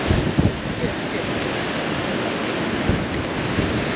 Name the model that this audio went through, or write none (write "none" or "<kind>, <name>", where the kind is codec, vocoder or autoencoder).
none